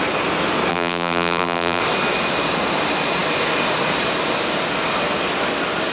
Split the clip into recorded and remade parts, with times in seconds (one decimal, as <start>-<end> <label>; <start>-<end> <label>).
0.0-0.7 recorded; 0.7-1.8 remade; 1.8-5.9 recorded